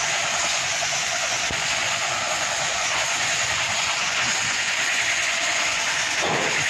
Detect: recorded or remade remade